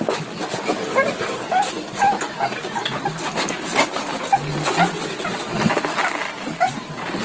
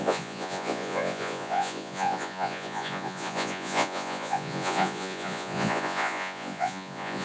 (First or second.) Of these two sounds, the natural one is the first